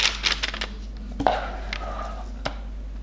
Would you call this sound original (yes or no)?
yes